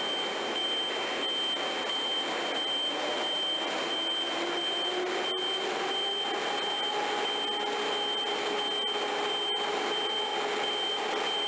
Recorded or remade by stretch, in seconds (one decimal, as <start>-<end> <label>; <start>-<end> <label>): 0.0-11.5 recorded